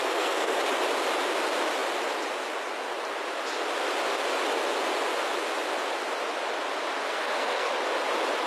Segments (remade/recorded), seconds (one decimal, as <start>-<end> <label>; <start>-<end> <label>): 0.0-0.6 remade; 0.6-7.0 recorded; 7.0-7.7 remade; 7.7-8.5 recorded

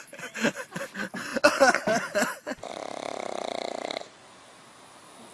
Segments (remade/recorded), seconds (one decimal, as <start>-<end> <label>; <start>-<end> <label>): 0.0-5.3 recorded

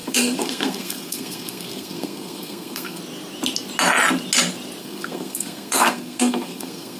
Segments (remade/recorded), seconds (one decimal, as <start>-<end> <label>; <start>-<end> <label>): 0.0-3.0 remade; 3.0-4.8 recorded; 4.8-7.0 remade

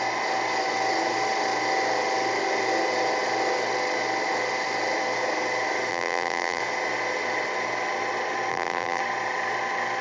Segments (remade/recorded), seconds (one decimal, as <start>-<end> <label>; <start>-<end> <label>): 0.0-5.9 recorded; 5.9-6.6 remade; 6.6-8.5 recorded; 8.5-9.0 remade; 9.0-10.0 recorded